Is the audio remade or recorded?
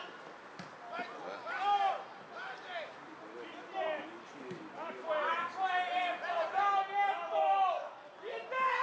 recorded